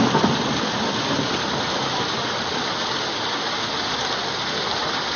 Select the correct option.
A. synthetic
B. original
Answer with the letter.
B